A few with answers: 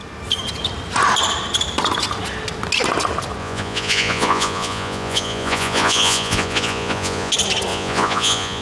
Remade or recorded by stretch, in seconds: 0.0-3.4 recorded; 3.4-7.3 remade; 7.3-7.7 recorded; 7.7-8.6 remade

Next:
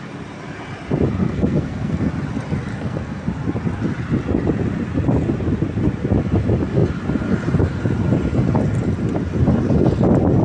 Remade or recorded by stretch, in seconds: 0.0-1.2 recorded; 1.2-2.1 remade; 2.1-2.7 recorded; 2.7-3.2 remade; 3.2-10.4 recorded

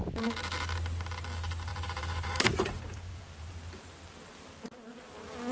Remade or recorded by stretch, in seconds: 0.0-1.7 recorded; 1.7-3.5 remade; 3.5-5.5 recorded

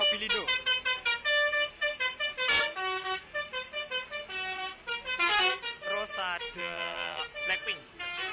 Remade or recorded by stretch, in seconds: 0.0-6.6 recorded; 6.6-7.2 remade; 7.2-8.3 recorded

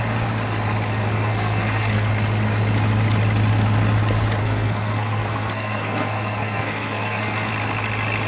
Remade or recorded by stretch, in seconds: 0.0-0.9 recorded; 0.9-2.1 remade; 2.1-4.4 recorded; 4.4-7.5 remade; 7.5-8.3 recorded